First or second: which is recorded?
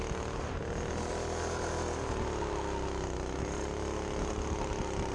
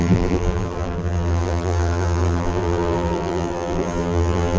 first